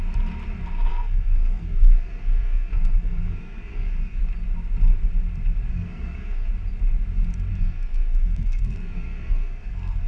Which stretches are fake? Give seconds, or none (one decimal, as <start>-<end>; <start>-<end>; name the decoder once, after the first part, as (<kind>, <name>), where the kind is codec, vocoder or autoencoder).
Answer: 0.9-4.2 (codec, SNAC); 5.7-6.5; 7.5-10.1